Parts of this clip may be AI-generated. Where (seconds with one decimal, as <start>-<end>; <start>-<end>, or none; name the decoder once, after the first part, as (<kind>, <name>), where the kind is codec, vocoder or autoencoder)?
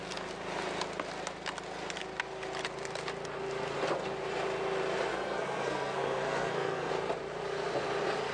5.1-6.9 (codec, SNAC)